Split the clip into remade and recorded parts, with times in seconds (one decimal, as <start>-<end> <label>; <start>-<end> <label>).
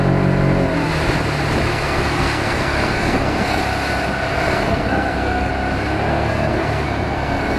0.0-1.7 recorded; 1.7-3.6 remade; 3.6-4.3 recorded; 4.3-5.5 remade; 5.5-6.1 recorded; 6.1-7.6 remade